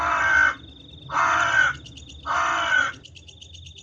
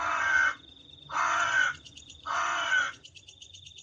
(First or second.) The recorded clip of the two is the first